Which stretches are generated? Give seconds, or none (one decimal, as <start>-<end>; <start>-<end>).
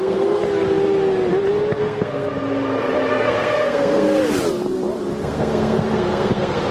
0.0-0.4; 1.8-2.3; 3.1-4.2; 5.2-6.7